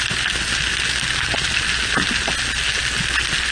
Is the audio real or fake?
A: real